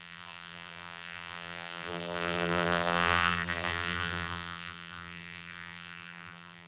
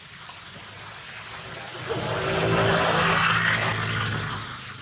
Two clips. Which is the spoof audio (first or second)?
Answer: first